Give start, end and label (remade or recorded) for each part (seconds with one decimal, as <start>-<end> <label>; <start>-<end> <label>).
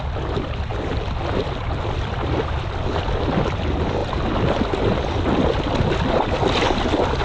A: 0.0-7.2 recorded